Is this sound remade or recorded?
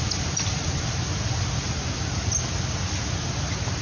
recorded